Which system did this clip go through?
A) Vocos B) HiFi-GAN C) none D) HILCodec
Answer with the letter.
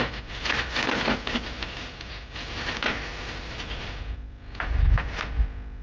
C